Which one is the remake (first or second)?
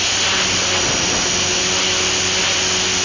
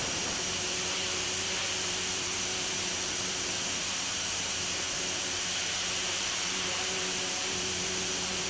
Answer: second